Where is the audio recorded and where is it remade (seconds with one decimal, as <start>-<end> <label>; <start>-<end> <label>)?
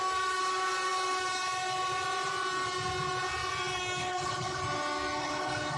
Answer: 0.0-4.0 recorded; 4.0-4.6 remade; 4.6-5.2 recorded; 5.2-5.8 remade